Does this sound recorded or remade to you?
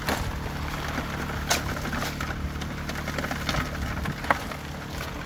recorded